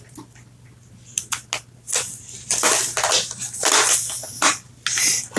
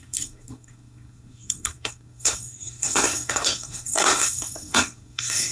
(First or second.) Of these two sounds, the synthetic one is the second